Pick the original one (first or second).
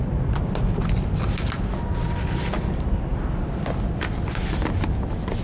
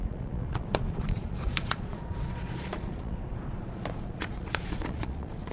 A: first